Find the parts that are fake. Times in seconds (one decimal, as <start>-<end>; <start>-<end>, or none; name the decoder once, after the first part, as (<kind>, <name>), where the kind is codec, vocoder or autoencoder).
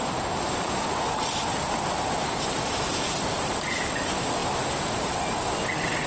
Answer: 0.0-3.7 (vocoder, BigVGAN v2); 4.4-5.1